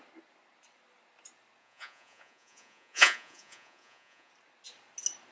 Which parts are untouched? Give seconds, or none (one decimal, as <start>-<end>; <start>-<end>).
0.0-1.6; 4.3-5.3